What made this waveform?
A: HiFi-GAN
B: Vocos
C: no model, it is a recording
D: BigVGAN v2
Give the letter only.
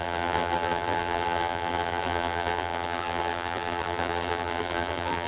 D